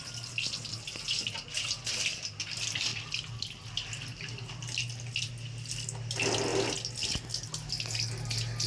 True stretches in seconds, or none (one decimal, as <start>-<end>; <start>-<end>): 0.0-8.7